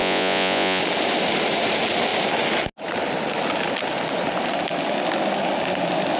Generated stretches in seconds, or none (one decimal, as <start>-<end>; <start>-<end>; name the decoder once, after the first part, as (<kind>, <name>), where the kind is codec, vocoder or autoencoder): 0.0-0.8 (vocoder, Vocos)